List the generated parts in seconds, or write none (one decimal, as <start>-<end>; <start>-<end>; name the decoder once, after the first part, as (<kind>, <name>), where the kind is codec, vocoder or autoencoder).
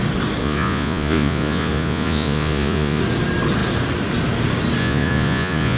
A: 0.4-3.0 (vocoder, Vocos); 4.8-5.8